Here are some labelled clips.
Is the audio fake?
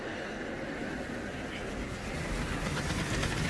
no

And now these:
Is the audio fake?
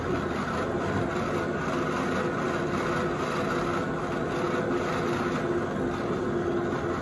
no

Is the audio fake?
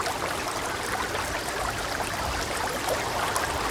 no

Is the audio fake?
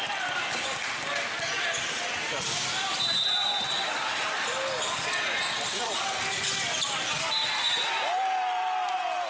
no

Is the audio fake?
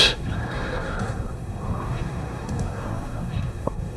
yes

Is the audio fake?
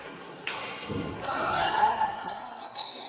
yes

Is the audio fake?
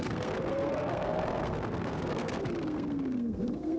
yes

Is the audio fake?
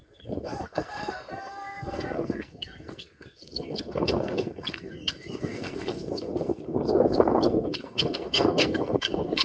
yes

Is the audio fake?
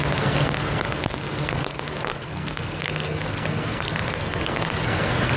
yes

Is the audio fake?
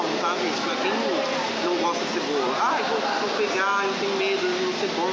no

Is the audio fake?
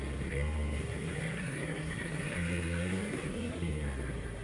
yes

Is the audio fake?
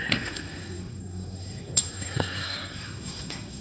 yes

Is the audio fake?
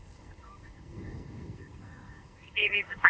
yes